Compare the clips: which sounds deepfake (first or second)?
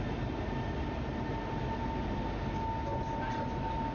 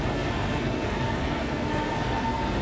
second